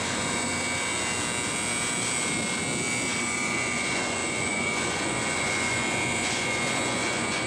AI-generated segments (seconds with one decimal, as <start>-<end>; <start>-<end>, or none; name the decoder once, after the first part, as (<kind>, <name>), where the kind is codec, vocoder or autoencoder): 0.0-0.5 (vocoder, Vocos); 3.2-7.5